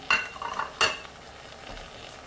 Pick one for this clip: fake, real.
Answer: real